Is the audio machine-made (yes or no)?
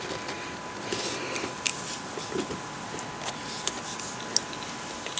no